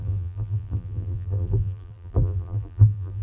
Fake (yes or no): yes